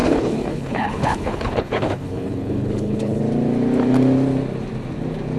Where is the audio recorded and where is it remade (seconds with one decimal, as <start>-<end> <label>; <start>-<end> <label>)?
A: 0.0-3.2 remade; 3.2-5.4 recorded